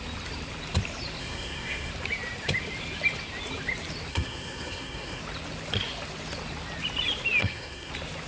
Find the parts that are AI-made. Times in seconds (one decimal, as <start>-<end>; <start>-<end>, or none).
1.2-1.9; 4.1-5.2; 7.4-7.9